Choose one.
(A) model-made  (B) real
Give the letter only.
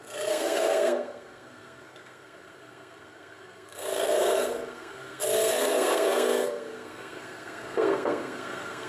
A